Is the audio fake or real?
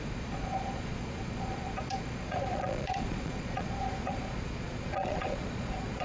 fake